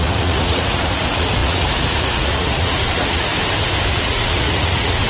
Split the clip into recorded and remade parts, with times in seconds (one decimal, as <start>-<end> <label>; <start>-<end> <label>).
0.0-3.3 remade; 3.3-3.9 recorded; 3.9-5.1 remade